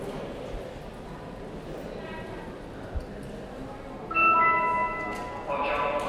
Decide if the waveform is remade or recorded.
recorded